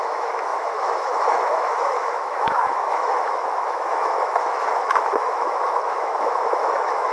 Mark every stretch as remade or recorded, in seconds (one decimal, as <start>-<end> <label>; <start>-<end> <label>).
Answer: 0.0-7.1 remade